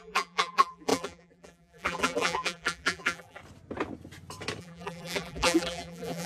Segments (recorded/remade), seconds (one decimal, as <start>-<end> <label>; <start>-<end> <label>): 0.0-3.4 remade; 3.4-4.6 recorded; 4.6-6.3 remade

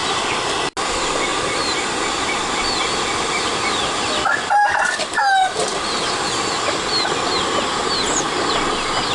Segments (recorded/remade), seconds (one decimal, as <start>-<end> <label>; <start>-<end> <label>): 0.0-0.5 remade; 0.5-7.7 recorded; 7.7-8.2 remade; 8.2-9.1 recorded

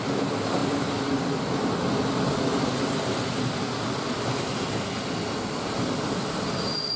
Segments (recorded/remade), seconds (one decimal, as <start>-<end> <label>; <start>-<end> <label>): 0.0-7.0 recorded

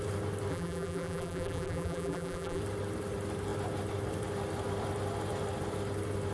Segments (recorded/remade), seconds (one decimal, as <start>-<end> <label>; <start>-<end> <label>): 0.0-0.5 recorded; 0.5-2.6 remade; 2.6-6.3 recorded

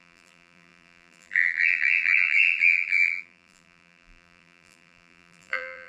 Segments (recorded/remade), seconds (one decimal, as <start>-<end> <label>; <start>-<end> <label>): 0.0-5.9 remade

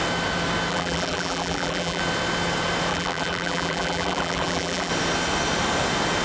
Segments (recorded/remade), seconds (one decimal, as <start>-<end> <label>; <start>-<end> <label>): 0.0-0.7 recorded; 0.7-2.0 remade; 2.0-2.9 recorded; 2.9-4.9 remade; 4.9-6.2 recorded